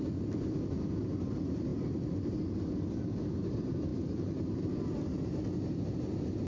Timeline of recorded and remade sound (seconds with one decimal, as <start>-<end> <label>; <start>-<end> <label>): 0.0-6.5 recorded